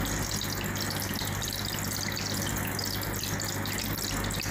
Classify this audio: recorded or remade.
recorded